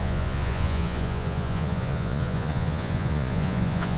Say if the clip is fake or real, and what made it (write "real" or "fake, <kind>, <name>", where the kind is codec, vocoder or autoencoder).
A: fake, vocoder, Vocos